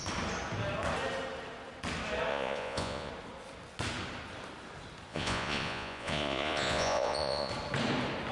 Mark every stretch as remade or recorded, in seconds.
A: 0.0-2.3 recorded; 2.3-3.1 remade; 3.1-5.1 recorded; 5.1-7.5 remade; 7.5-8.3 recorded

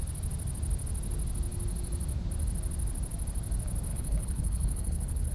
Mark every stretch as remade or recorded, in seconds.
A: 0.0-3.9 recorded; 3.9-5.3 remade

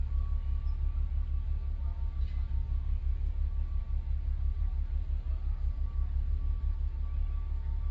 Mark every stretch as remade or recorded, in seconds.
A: 0.0-7.9 recorded

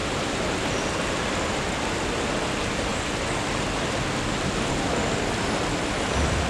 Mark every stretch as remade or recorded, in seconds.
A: 0.0-6.5 recorded

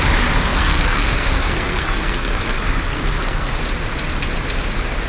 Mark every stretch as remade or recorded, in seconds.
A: 0.0-0.5 recorded; 0.5-3.6 remade; 3.6-5.1 recorded

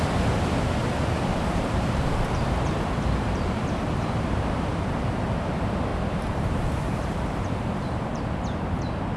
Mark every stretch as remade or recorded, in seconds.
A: 0.0-0.8 recorded; 0.8-4.5 remade; 4.5-5.9 recorded; 5.9-8.2 remade; 8.2-9.2 recorded